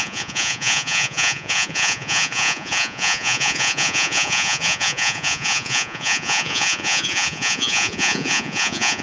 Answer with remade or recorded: remade